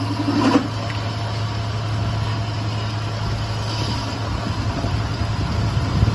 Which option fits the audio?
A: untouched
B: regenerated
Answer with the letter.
A